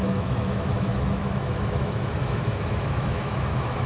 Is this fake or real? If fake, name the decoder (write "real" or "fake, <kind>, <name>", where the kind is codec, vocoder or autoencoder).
fake, autoencoder, DAC-VAE